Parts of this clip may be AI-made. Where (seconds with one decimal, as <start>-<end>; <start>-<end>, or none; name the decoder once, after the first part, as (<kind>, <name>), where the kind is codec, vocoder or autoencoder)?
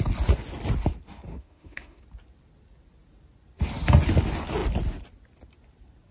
1.3-2.0 (autoencoder, DAC-VAE)